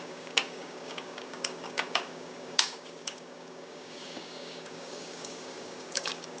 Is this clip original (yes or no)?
no